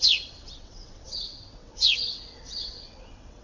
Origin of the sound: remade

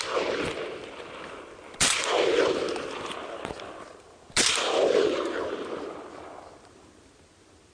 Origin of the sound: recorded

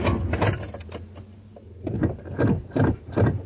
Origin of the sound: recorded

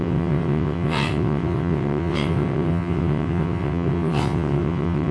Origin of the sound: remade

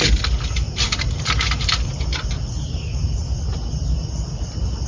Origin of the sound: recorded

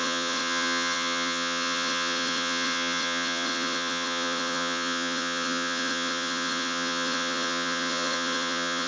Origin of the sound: remade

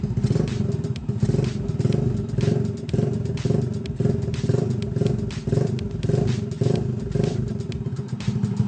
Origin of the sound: recorded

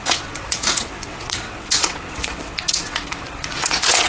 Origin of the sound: remade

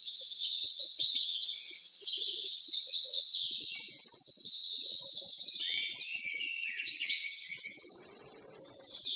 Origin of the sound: remade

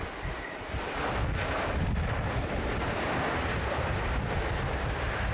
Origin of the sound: recorded